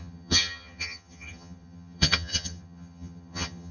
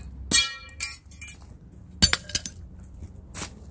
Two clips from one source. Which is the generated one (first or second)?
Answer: first